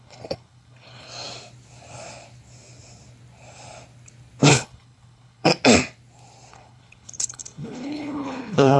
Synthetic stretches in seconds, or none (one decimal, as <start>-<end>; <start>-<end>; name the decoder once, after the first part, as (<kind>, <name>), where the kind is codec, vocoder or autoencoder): 0.0-1.1 (codec, HILCodec); 4.5-5.5; 6.5-8.8